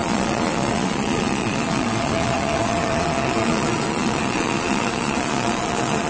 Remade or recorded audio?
remade